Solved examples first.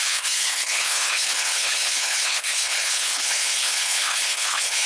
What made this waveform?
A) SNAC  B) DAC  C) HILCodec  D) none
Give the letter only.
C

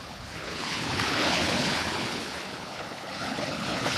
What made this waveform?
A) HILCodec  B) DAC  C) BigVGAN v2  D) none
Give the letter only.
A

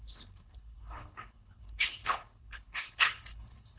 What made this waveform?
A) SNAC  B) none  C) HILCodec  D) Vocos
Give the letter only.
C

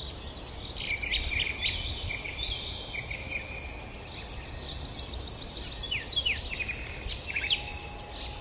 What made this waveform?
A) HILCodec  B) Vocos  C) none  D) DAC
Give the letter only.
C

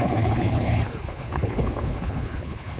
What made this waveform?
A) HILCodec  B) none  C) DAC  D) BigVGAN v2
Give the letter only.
A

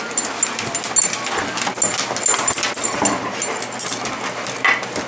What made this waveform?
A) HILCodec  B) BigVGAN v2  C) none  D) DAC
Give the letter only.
C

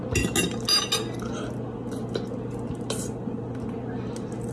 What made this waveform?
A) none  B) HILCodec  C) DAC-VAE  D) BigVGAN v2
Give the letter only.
A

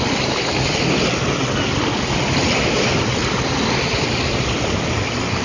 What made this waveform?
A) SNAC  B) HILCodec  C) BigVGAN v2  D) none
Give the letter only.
D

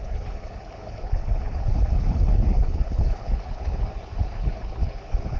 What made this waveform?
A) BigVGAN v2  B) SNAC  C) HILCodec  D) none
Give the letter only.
C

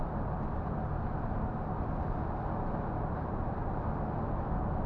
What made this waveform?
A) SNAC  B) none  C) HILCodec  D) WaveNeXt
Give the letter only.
B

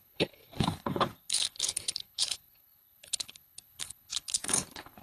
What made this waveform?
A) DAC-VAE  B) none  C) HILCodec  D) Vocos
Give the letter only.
C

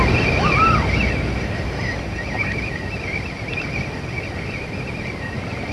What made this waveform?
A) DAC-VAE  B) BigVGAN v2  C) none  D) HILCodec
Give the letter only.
C